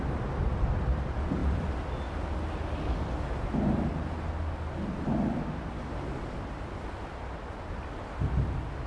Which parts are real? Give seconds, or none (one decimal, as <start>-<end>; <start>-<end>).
0.0-8.9